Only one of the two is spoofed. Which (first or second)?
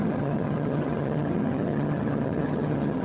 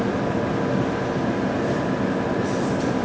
first